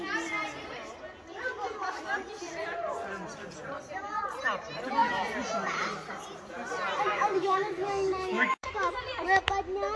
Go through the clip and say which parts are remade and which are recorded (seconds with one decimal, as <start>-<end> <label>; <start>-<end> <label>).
0.0-7.1 recorded; 7.1-9.0 remade; 9.0-10.0 recorded